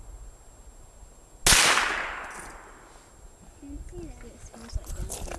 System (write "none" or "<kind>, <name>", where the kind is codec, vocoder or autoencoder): none